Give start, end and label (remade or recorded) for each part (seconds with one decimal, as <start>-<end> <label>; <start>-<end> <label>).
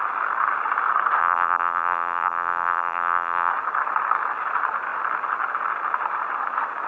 0.0-1.2 recorded; 1.2-3.5 remade; 3.5-6.9 recorded